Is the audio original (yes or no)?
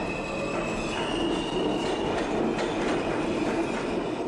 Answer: yes